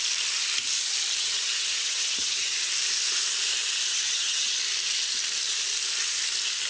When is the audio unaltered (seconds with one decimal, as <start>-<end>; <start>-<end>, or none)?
0.0-1.2; 2.7-3.9; 4.6-6.7